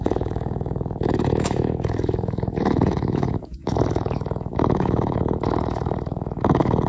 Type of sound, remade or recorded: remade